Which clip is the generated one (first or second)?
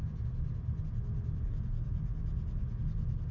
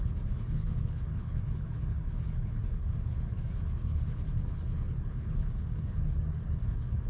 second